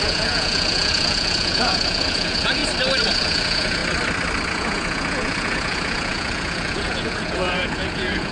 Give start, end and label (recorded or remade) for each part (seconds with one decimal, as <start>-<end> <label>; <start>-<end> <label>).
0.0-2.6 remade; 2.6-3.1 recorded; 3.1-3.8 remade; 3.8-4.5 recorded; 4.5-8.3 remade